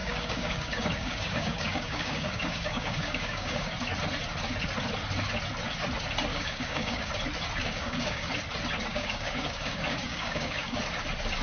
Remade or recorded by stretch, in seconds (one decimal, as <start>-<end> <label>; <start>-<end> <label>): 0.0-3.7 remade; 3.7-6.3 recorded; 6.3-7.1 remade; 7.1-7.6 recorded; 7.6-8.3 remade; 8.3-8.9 recorded; 8.9-10.8 remade; 10.8-11.4 recorded